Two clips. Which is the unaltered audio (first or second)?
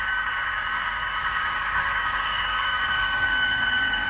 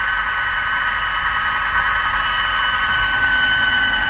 second